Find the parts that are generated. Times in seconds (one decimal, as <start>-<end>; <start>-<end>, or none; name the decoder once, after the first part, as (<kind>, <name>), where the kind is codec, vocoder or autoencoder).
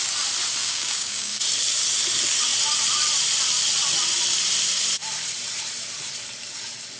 0.6-1.4 (codec, DAC)